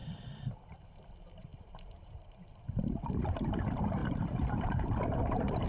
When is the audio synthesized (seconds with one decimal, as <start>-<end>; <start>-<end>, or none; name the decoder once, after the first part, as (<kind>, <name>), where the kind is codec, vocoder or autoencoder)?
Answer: 1.5-3.5 (vocoder, BigVGAN v2); 4.0-5.7